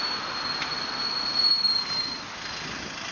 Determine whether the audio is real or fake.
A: real